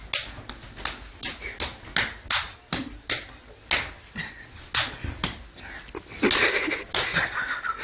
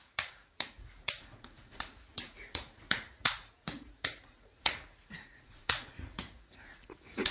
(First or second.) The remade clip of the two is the second